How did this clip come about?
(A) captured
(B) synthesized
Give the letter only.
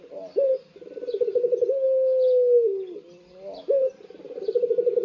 A